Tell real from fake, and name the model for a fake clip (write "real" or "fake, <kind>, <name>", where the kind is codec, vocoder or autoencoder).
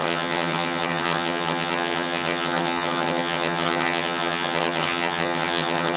fake, vocoder, HiFi-GAN